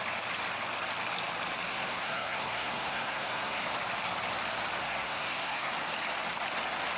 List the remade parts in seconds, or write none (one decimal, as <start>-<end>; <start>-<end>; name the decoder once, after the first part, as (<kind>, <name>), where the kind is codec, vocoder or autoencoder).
1.7-3.6 (codec, SNAC); 4.8-5.7